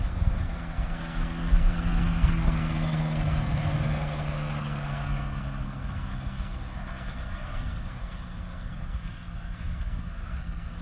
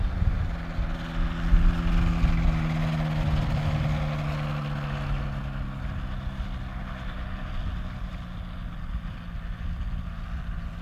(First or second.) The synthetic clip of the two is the first